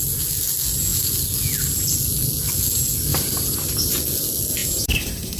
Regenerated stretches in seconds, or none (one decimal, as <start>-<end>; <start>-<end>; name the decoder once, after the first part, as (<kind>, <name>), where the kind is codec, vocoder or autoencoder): 3.1-3.9 (vocoder, BigVGAN v2); 4.6-5.4